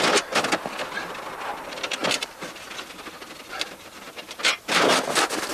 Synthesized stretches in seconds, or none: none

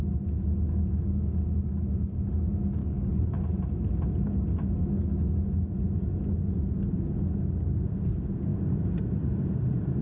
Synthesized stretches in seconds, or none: 2.8-3.4 (codec, HILCodec)

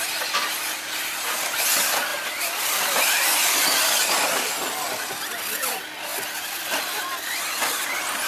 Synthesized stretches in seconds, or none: 2.1-4.6 (vocoder, BigVGAN v2); 6.1-6.6

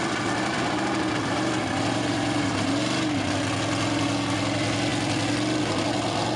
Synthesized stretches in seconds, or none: none

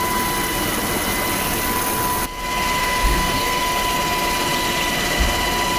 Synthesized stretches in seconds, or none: 2.8-3.6 (codec, SNAC)

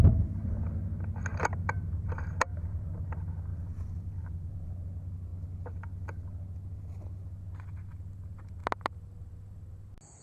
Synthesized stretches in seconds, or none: 1.3-3.0 (vocoder, BigVGAN v2); 3.5-4.7